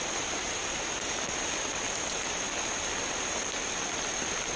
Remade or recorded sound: recorded